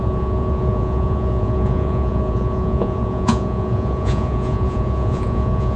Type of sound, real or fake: fake